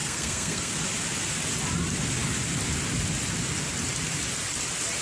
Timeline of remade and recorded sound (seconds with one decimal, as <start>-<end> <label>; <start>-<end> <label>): 0.0-0.7 remade; 0.7-5.0 recorded